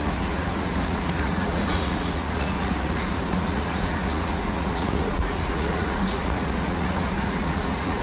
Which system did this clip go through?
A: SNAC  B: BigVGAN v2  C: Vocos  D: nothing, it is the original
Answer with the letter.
C